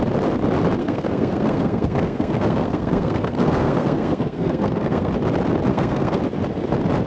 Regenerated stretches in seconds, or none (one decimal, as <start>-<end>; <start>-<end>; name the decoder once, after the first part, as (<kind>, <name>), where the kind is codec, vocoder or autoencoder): 0.8-5.1 (codec, SNAC); 5.7-6.2